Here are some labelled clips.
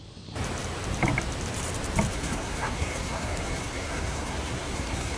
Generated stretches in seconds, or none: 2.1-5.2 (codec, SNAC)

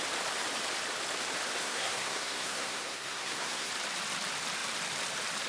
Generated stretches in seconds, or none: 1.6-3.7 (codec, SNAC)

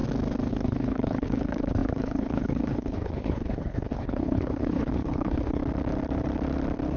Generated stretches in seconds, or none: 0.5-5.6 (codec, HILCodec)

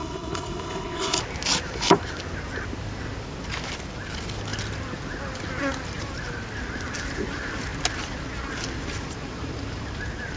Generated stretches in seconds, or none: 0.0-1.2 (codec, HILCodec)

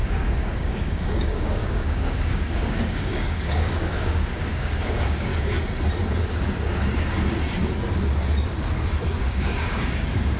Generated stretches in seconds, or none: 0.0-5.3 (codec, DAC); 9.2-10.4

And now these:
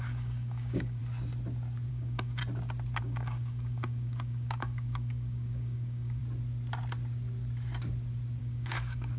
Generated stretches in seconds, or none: 0.0-1.0 (codec, DAC); 1.9-2.4; 3.0-6.2; 8.4-9.2

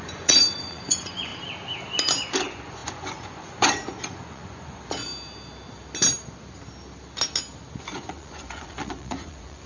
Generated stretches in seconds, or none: 0.0-1.3 (vocoder, Vocos); 2.4-5.1; 7.8-9.7